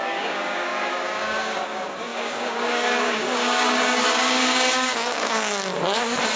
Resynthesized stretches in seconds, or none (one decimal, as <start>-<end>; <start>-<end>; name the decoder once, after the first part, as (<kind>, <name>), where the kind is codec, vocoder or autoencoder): 0.0-5.5 (codec, DAC)

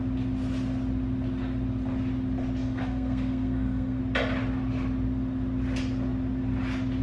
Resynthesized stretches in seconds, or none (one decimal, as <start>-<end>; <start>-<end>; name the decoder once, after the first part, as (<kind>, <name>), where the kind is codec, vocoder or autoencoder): 2.6-4.0 (codec, SNAC)

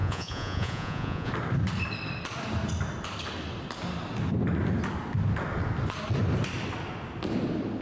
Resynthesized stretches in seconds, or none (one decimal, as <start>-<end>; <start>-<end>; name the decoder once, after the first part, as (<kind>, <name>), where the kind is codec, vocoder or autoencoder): 0.0-1.3 (vocoder, Vocos)

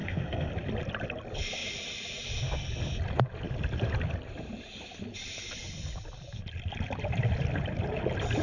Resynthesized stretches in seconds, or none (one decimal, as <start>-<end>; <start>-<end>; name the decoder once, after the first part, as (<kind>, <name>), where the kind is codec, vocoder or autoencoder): 0.0-0.5 (codec, SNAC)